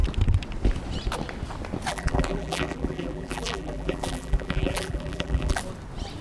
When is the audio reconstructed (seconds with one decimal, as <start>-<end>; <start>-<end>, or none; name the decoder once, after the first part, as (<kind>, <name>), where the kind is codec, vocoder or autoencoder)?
1.9-5.6 (vocoder, BigVGAN v2)